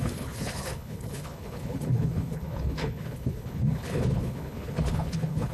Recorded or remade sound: remade